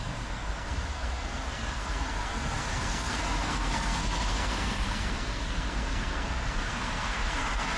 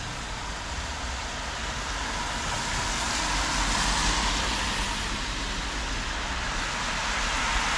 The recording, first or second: second